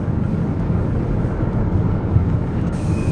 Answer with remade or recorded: remade